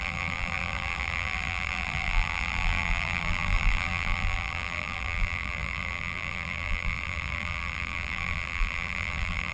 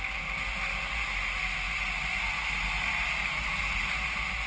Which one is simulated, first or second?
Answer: first